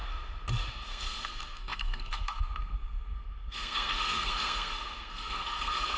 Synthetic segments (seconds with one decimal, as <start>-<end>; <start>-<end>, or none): 0.7-6.0